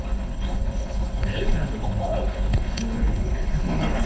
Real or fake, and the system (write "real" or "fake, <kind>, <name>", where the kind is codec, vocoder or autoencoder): fake, codec, HILCodec